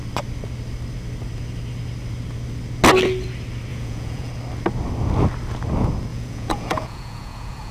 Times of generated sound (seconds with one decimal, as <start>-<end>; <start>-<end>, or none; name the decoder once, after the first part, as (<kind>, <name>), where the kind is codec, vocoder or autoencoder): 3.7-4.3 (vocoder, Vocos); 6.1-7.7